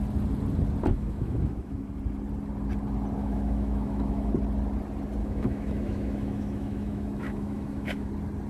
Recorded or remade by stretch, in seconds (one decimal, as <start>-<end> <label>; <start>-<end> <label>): 0.0-0.9 recorded; 0.9-1.9 remade; 1.9-3.2 recorded; 3.2-4.3 remade; 4.3-5.2 recorded; 5.2-8.1 remade; 8.1-8.5 recorded